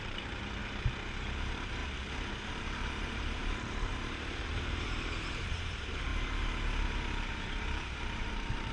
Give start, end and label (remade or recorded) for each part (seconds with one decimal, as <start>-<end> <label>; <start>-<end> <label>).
0.0-0.6 remade; 0.6-1.1 recorded; 1.1-1.8 remade; 1.8-2.5 recorded; 2.5-6.1 remade; 6.1-7.4 recorded; 7.4-8.7 remade